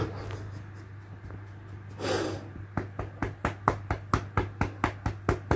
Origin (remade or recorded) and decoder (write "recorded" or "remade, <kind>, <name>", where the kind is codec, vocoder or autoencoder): recorded